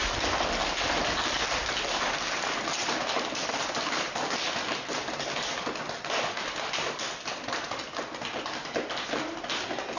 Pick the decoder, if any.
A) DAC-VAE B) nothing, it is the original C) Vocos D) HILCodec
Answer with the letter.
B